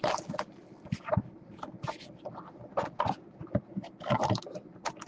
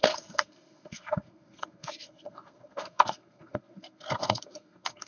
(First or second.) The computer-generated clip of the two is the second